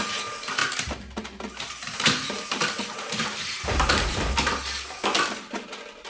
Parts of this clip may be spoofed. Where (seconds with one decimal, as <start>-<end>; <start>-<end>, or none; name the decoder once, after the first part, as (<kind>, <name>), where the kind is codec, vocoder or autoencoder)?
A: 0.6-4.3 (vocoder, BigVGAN v2)